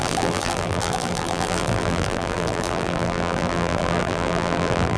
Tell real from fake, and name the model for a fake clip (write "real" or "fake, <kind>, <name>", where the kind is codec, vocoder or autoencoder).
fake, vocoder, BigVGAN v2